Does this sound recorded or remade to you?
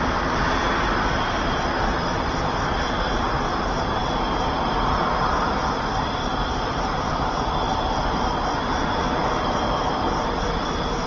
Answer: recorded